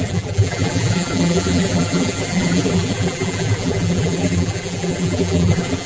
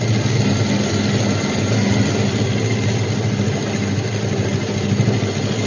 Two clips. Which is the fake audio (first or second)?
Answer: first